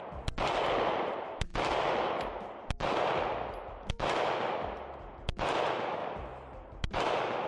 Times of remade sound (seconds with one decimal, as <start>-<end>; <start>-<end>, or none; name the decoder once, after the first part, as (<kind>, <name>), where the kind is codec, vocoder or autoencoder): none